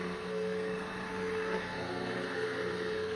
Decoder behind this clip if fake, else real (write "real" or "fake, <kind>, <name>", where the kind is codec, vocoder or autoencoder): fake, codec, SNAC